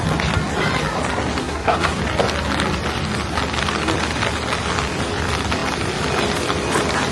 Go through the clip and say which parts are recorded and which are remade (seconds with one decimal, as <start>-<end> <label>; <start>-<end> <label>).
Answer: 0.0-1.4 recorded; 1.4-2.0 remade; 2.0-7.1 recorded